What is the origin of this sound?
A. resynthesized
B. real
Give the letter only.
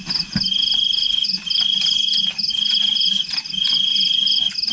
B